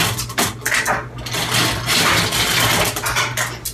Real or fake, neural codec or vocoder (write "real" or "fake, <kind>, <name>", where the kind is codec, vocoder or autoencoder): real